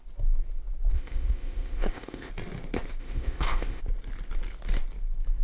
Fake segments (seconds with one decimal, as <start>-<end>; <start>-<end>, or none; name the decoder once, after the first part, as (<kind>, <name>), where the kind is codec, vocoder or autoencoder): 0.9-2.3 (codec, ZipCodec); 3.0-3.8